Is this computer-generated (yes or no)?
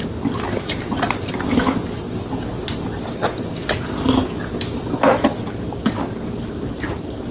yes